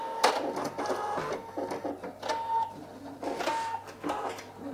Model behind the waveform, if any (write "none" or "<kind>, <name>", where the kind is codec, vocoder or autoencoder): none